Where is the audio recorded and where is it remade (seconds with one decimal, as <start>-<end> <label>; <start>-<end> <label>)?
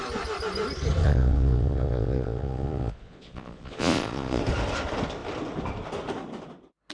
0.0-1.0 recorded; 1.0-4.4 remade; 4.4-6.9 recorded